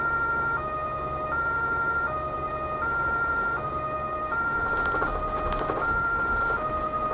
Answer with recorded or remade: recorded